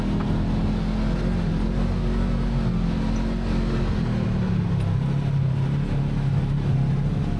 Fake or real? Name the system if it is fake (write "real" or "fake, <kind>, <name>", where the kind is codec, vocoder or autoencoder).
real